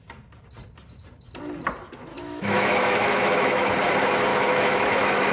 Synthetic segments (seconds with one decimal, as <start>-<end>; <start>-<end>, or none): 2.1-3.7; 4.3-5.3